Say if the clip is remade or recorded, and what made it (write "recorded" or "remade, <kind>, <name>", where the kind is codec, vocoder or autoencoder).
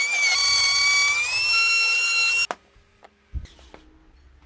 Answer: recorded